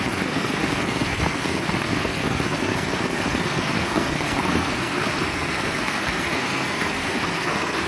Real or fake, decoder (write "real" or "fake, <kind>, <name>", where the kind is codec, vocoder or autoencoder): fake, codec, SNAC